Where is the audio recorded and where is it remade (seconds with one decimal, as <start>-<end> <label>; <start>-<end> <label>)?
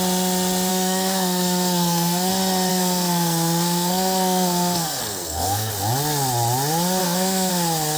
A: 0.0-0.7 recorded; 0.7-2.3 remade; 2.3-2.7 recorded; 2.7-5.7 remade; 5.7-7.0 recorded; 7.0-7.5 remade; 7.5-8.0 recorded